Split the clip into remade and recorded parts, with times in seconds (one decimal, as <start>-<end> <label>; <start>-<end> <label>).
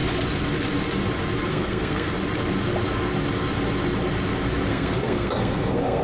0.0-1.5 recorded; 1.5-2.1 remade; 2.1-4.7 recorded; 4.7-6.0 remade